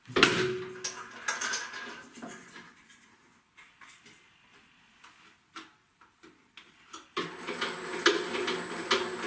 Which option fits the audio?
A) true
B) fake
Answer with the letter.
A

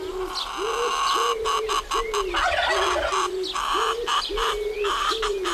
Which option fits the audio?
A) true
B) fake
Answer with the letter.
A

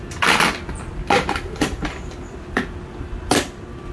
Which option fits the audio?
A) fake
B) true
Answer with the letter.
B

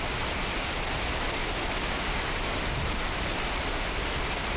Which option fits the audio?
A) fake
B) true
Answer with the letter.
B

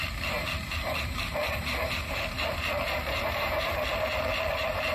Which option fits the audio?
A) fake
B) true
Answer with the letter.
A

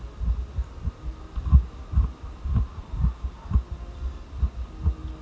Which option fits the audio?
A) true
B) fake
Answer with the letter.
A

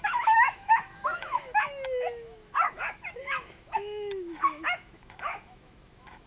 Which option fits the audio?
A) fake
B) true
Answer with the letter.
A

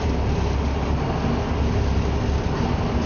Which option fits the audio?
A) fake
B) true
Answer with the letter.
B